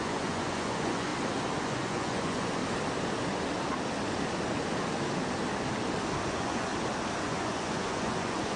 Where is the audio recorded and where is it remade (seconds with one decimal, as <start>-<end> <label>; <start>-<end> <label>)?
0.0-1.1 remade; 1.1-1.6 recorded; 1.6-2.6 remade; 2.6-6.3 recorded; 6.3-6.7 remade; 6.7-7.2 recorded; 7.2-8.6 remade

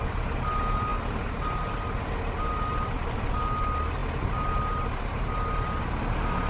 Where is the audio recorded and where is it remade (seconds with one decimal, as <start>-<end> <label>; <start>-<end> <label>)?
0.0-6.5 recorded

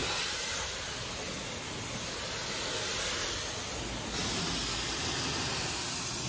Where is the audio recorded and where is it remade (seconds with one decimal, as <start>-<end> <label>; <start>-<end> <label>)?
0.0-6.3 recorded

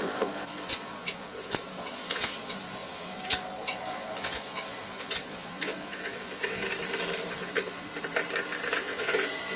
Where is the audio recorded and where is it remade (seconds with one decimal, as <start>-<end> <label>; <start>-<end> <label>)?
0.0-6.6 remade; 6.6-7.3 recorded; 7.3-7.9 remade; 7.9-8.7 recorded; 8.7-9.6 remade